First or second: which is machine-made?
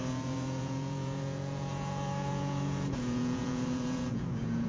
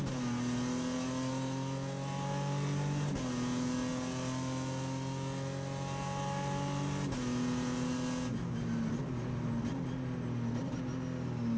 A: first